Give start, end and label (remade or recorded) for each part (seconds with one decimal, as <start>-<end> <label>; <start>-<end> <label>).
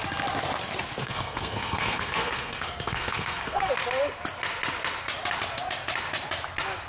0.0-1.0 recorded; 1.0-3.7 remade; 3.7-6.9 recorded